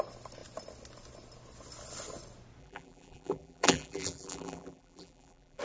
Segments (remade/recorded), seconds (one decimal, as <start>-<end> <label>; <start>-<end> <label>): 0.0-2.6 recorded; 2.6-5.6 remade